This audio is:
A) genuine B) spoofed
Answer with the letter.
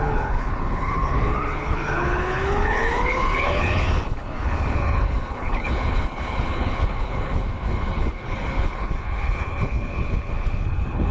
B